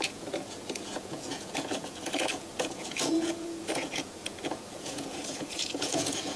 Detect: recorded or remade remade